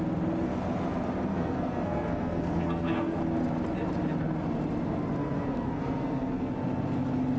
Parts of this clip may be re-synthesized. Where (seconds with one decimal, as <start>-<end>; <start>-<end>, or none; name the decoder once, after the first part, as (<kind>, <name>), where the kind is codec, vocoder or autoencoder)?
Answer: 1.3-3.2 (codec, SNAC); 5.2-6.5